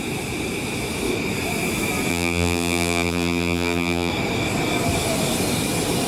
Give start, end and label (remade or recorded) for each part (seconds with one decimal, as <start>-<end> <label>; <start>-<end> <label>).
0.0-2.1 recorded; 2.1-4.1 remade; 4.1-6.1 recorded